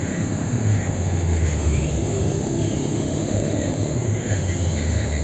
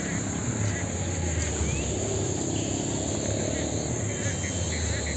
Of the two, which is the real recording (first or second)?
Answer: second